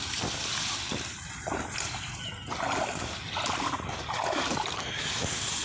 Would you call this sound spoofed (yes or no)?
no